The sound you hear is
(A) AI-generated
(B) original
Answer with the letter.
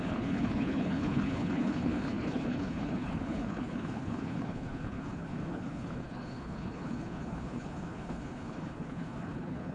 A